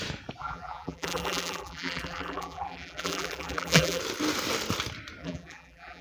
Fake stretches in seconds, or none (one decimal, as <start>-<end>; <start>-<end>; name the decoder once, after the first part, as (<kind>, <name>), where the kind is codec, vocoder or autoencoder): 0.4-4.0 (vocoder, BigVGAN v2); 5.2-6.0